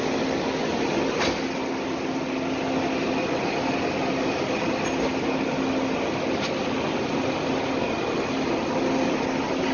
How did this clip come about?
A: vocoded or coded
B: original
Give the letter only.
B